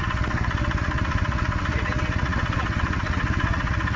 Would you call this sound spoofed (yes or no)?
yes